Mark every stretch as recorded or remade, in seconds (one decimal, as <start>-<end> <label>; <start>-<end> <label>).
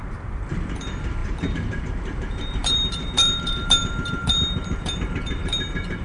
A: 0.0-6.0 remade